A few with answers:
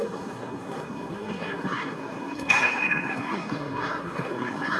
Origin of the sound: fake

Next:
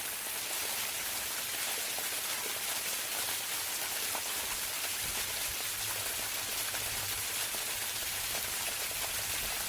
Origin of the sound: real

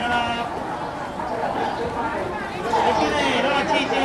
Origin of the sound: real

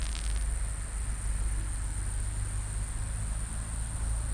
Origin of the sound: real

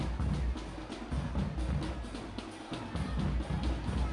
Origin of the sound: real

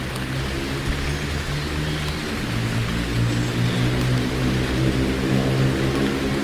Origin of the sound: real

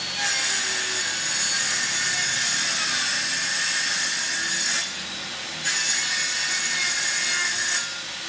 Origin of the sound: real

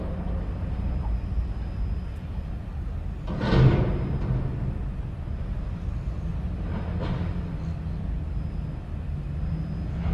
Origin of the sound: real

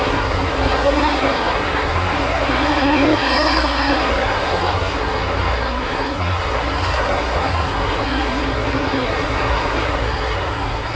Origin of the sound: fake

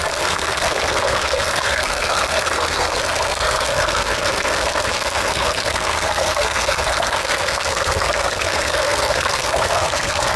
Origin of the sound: fake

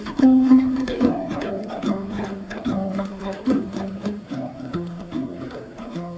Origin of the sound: fake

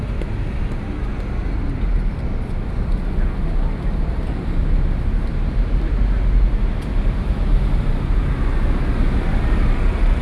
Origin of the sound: real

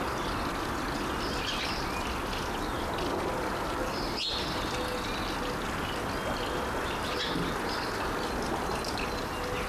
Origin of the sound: real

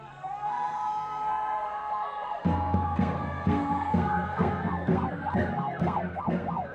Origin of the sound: fake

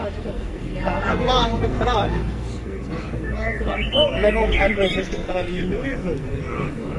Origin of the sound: fake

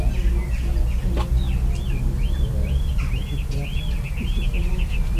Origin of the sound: real